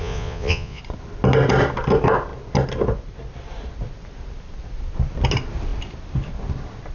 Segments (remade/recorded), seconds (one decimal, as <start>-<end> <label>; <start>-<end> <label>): 0.0-0.8 remade; 0.8-6.9 recorded

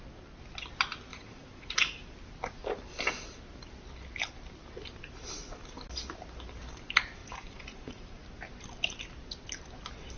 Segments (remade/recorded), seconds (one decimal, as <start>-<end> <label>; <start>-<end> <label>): 0.0-1.1 recorded; 1.1-2.0 remade; 2.0-7.2 recorded; 7.2-8.2 remade; 8.2-10.2 recorded